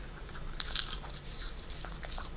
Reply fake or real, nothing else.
fake